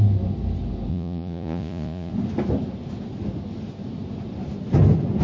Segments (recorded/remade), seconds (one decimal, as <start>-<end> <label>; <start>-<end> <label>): 0.0-0.9 recorded; 0.9-2.1 remade; 2.1-5.2 recorded